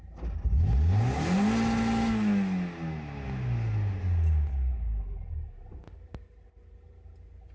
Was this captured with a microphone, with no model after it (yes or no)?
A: yes